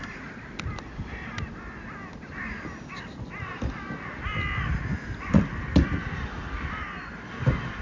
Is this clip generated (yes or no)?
no